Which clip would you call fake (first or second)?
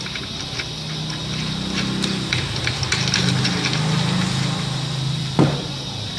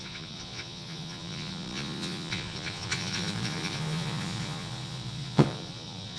second